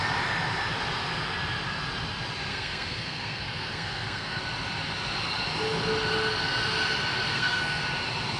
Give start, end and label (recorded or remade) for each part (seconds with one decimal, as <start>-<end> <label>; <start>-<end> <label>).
0.0-2.5 recorded; 2.5-4.4 remade; 4.4-7.3 recorded; 7.3-7.8 remade; 7.8-8.4 recorded